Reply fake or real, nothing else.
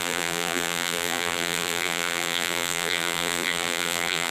fake